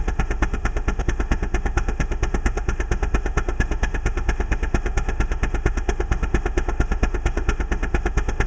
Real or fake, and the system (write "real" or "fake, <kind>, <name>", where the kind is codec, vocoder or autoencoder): fake, autoencoder, DAC-VAE